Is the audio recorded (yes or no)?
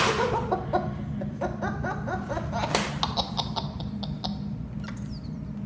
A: yes